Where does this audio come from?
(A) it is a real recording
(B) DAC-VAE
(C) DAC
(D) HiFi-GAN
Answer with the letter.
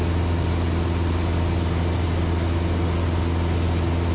A